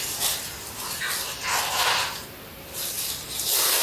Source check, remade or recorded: recorded